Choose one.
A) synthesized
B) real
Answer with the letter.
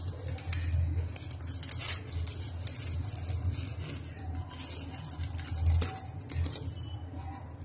B